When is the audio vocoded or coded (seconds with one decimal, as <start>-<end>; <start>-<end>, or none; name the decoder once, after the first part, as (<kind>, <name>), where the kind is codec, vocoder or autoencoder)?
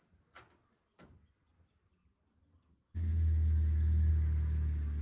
3.1-4.1 (autoencoder, DAC-VAE)